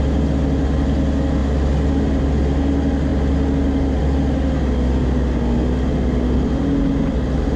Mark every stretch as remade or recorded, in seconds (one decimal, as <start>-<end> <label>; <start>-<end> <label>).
0.0-7.6 recorded